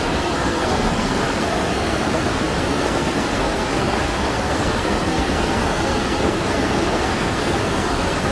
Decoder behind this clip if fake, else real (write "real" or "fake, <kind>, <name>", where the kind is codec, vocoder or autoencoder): fake, codec, SNAC